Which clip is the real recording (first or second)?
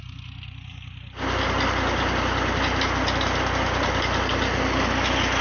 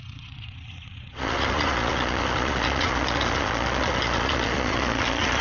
first